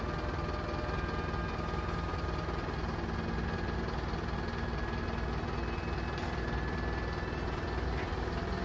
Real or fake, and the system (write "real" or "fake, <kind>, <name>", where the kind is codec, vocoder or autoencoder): real